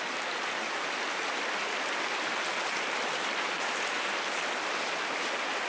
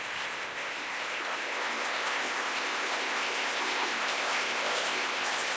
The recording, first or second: first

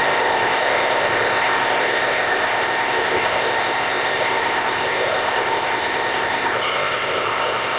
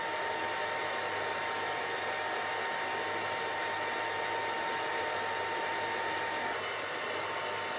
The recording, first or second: second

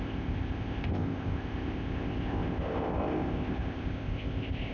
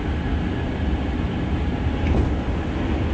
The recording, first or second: second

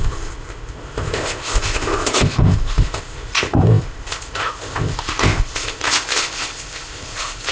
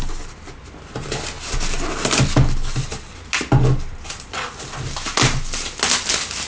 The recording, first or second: second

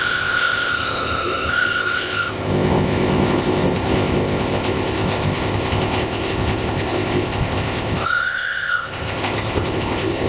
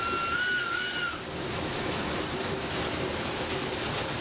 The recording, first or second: second